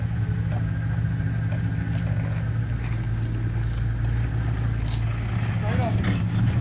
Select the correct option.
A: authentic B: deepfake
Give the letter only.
A